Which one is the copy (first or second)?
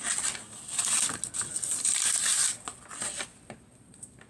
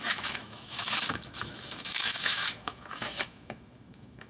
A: second